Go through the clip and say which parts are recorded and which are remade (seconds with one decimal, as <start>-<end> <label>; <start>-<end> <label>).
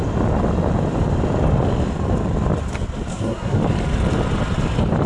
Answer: 0.0-3.1 recorded; 3.1-3.6 remade; 3.6-5.1 recorded